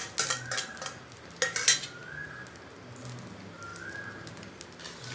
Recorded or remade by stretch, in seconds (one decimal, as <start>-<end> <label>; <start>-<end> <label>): 0.0-5.1 recorded